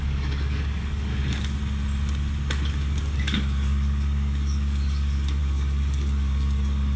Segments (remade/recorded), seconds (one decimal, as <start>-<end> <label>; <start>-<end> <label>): 0.0-1.2 remade; 1.2-2.7 recorded; 2.7-7.0 remade